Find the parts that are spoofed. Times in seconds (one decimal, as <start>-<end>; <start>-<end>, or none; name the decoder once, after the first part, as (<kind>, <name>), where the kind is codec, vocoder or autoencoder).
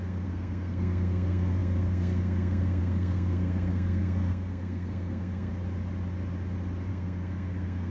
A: 0.0-5.5 (codec, SNAC); 6.9-7.9